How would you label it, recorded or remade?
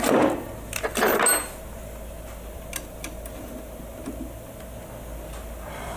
recorded